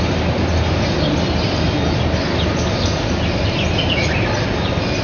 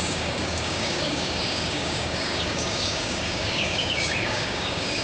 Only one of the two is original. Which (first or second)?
first